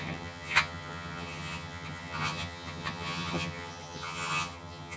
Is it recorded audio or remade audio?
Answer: remade